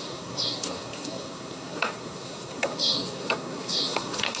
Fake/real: fake